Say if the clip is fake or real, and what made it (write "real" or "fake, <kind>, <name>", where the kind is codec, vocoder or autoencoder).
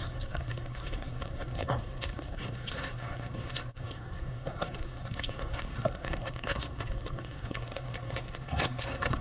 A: fake, codec, SNAC